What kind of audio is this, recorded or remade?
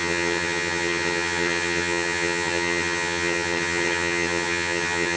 remade